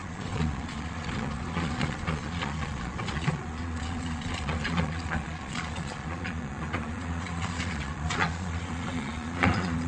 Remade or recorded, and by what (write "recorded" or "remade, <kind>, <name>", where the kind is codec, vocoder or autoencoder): remade, vocoder, Vocos